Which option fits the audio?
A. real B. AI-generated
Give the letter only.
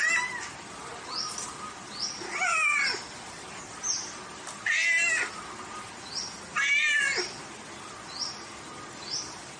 A